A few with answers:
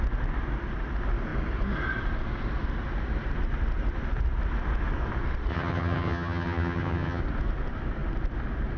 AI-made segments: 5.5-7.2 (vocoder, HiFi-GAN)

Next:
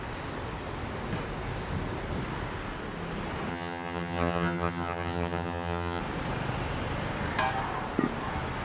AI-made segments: 3.5-6.0 (vocoder, HiFi-GAN)

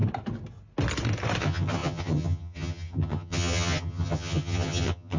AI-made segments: 1.4-5.2 (vocoder, HiFi-GAN)

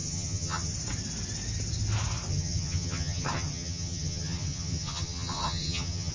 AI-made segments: 0.0-0.7 (vocoder, HiFi-GAN); 2.3-6.1